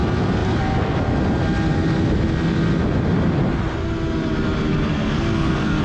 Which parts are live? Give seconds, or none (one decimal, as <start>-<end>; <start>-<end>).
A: 0.0-4.9